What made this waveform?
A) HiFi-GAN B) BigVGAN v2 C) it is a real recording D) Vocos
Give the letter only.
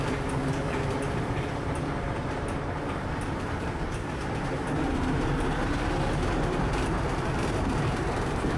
B